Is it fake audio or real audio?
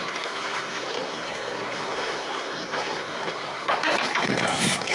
fake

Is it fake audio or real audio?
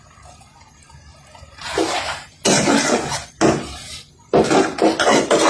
real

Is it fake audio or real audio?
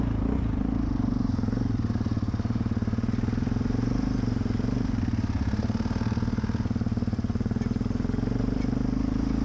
real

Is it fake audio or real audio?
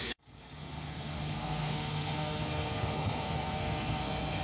fake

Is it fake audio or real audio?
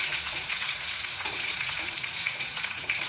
fake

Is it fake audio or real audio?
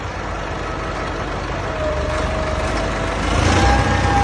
real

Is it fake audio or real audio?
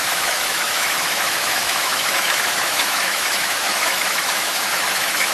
fake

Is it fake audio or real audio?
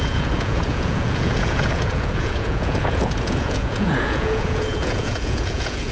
fake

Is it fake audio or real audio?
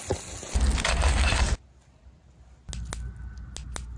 real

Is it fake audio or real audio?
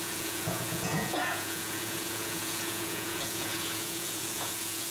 fake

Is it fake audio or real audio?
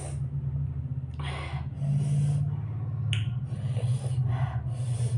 real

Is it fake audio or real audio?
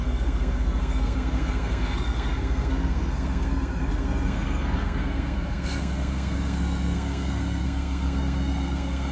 fake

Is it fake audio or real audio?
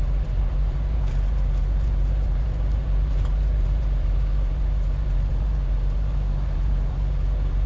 fake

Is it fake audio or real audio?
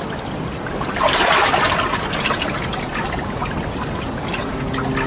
real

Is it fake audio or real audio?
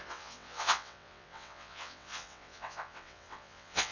fake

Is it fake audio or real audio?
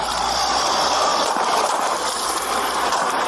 real